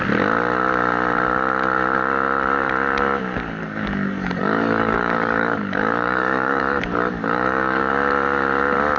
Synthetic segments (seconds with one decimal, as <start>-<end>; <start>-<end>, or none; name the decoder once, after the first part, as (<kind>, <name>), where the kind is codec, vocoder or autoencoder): 3.6-7.9 (codec, DAC)